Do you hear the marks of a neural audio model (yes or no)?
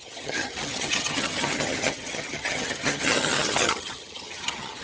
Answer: yes